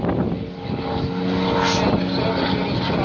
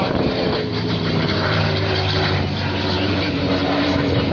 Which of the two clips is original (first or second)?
first